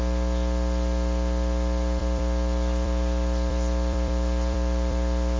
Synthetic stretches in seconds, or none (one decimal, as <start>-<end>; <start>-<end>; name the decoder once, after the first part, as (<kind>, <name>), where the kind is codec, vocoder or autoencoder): 2.0-5.4 (vocoder, BigVGAN v2)